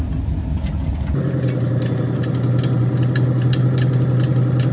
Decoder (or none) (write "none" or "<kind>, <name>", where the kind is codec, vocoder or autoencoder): none